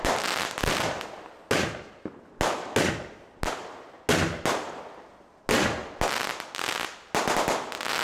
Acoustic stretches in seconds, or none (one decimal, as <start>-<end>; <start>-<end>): 0.0-8.0